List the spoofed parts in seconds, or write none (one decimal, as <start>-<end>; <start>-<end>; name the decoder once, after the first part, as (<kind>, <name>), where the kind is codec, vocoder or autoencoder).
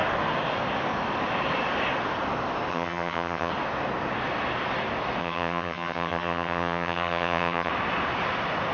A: 2.7-3.5 (vocoder, HiFi-GAN); 5.2-7.7